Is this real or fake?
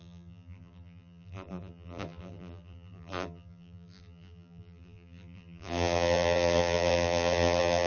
fake